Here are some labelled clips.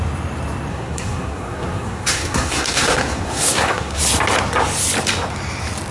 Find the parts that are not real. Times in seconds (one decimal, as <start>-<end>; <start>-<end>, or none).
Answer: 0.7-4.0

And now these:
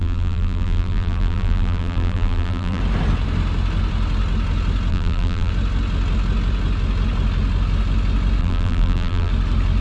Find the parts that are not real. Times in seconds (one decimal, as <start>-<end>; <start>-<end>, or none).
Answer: 0.0-2.8; 4.9-5.5; 8.4-9.3

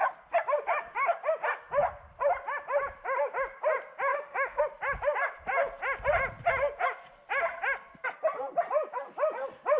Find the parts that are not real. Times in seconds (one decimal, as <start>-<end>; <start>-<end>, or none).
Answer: 4.1-4.6

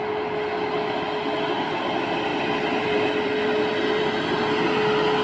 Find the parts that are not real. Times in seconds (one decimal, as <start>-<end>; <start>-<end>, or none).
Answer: 2.3-4.4

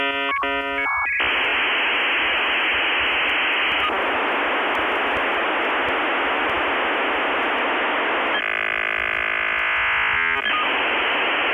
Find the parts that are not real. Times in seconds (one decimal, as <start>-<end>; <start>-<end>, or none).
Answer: none

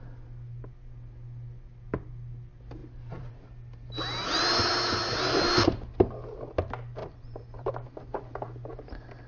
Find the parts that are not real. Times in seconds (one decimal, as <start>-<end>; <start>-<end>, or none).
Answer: 2.8-3.3; 7.0-7.7

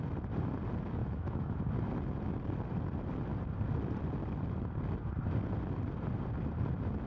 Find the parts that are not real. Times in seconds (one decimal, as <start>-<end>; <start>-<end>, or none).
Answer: 1.0-1.6

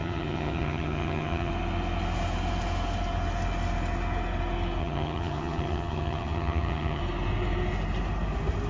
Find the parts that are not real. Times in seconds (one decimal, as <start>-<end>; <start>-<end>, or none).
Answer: 0.0-1.5; 4.8-7.0